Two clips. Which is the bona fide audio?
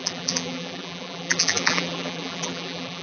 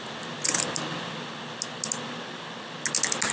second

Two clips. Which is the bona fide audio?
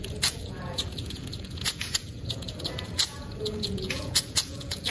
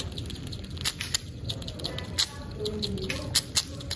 second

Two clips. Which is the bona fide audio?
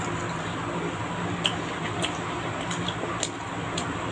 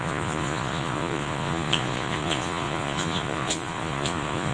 first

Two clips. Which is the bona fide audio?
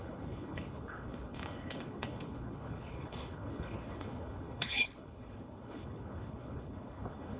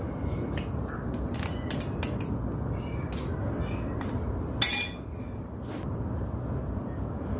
second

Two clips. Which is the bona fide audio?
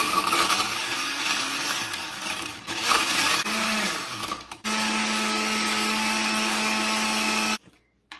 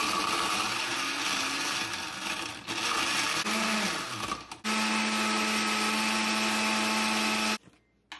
second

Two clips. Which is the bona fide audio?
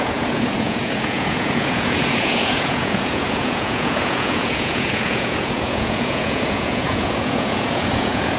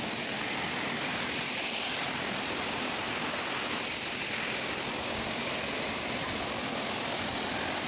second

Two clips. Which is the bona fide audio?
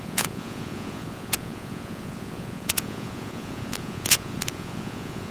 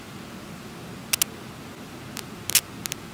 second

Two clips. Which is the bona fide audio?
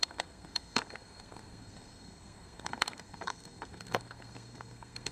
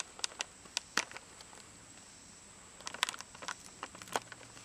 second